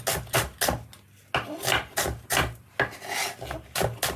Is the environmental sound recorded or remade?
recorded